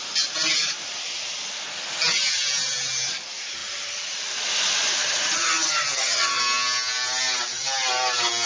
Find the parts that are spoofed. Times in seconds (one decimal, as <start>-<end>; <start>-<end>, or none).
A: 5.0-6.4